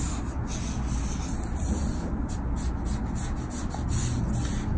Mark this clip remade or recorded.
recorded